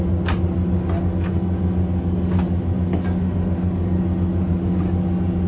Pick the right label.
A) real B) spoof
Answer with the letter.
A